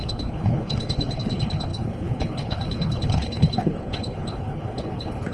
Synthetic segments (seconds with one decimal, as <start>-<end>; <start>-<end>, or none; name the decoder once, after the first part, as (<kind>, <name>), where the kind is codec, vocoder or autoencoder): 0.0-5.3 (codec, HILCodec)